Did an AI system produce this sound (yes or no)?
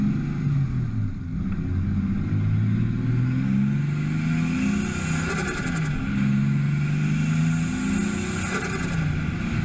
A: no